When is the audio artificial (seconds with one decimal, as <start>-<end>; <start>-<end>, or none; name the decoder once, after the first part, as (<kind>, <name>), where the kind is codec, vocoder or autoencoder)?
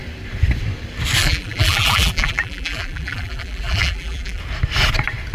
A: 1.2-4.4 (vocoder, BigVGAN v2)